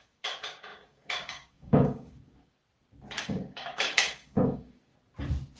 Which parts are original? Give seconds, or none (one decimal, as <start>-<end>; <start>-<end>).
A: 2.6-3.2; 4.9-5.6